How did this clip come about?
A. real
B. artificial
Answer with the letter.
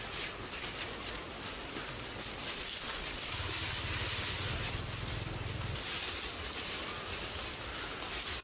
A